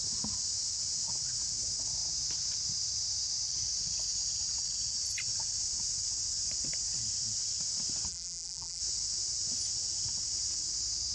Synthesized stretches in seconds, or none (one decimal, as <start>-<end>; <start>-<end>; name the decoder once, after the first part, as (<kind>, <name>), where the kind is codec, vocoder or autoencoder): 8.1-8.8 (vocoder, BigVGAN v2)